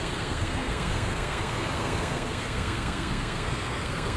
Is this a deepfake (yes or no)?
yes